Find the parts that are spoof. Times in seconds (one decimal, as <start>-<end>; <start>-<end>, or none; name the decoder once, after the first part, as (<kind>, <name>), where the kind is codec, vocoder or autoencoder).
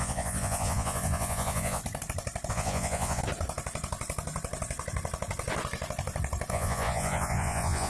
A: 0.0-1.8 (vocoder, Vocos); 2.5-3.2; 6.5-7.9